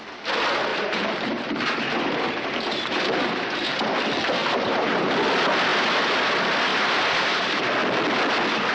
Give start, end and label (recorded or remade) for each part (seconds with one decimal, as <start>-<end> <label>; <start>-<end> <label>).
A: 0.0-0.7 recorded; 0.7-3.9 remade; 3.9-4.4 recorded; 4.4-5.1 remade; 5.1-6.7 recorded; 6.7-7.6 remade; 7.6-8.7 recorded

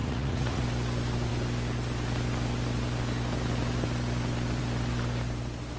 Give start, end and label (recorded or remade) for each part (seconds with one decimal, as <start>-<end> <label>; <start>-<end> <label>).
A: 0.0-0.6 remade; 0.6-5.8 recorded

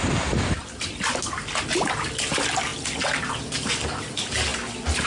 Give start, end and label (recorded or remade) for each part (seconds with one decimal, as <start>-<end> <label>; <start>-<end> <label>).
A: 0.0-5.1 recorded

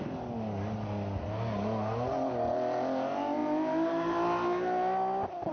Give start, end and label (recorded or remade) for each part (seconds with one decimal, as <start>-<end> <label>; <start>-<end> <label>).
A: 0.0-5.5 recorded

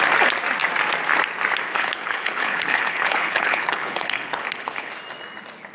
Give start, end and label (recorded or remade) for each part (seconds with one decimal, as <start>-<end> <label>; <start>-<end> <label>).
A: 0.0-1.7 recorded; 1.7-4.9 remade; 4.9-5.7 recorded

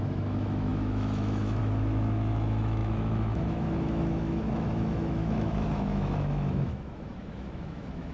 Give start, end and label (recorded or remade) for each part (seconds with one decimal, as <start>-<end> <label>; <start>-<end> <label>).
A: 0.0-8.1 remade

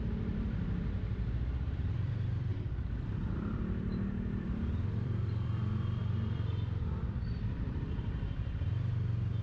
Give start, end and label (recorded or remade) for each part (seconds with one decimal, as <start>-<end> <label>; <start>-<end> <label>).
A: 0.0-9.4 remade

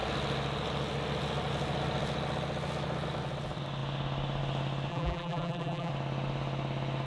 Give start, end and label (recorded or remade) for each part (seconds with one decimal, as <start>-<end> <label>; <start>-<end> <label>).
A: 0.0-4.9 recorded; 4.9-5.9 remade; 5.9-7.1 recorded